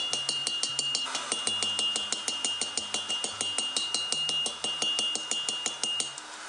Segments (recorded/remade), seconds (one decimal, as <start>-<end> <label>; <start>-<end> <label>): 0.0-6.5 recorded